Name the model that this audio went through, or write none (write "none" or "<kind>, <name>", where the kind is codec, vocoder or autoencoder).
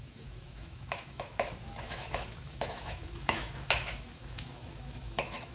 autoencoder, DAC-VAE